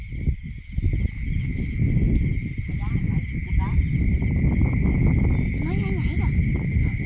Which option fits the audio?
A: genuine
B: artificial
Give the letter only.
A